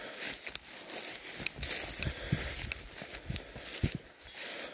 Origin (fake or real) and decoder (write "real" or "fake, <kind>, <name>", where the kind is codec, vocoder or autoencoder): real